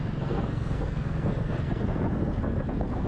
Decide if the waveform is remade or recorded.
remade